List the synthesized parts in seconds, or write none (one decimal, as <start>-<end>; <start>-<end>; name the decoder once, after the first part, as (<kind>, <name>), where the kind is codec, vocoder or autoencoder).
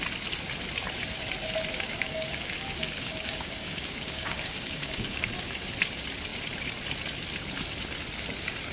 1.7-5.7 (codec, DAC)